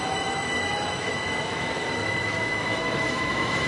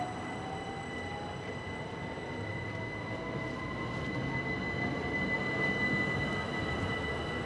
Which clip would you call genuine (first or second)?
second